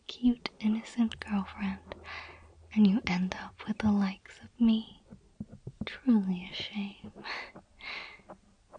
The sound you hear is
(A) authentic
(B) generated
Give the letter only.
A